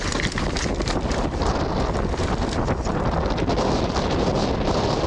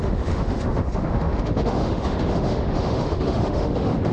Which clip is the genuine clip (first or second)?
first